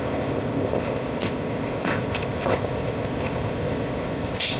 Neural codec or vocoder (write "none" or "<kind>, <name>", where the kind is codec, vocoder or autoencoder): codec, ZipCodec